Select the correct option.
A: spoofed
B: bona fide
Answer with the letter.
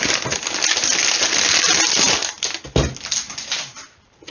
B